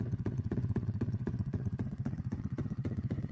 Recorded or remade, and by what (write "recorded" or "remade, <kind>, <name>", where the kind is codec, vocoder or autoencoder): remade, vocoder, WaveNeXt